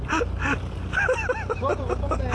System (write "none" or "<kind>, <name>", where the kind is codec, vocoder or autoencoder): none